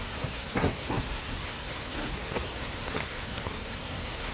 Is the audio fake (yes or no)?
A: yes